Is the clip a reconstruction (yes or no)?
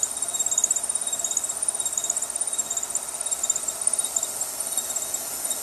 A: no